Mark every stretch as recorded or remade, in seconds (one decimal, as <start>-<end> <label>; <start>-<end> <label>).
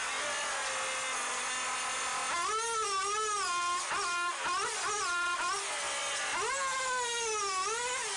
0.0-8.2 recorded